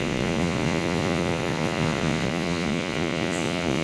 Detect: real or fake fake